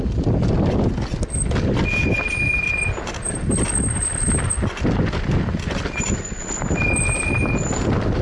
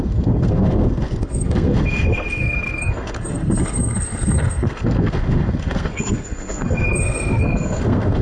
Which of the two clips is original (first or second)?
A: first